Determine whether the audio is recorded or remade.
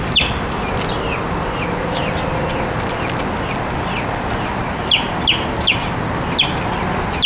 recorded